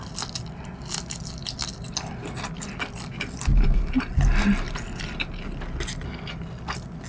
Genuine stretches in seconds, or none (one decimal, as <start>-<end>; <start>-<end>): 0.0-7.1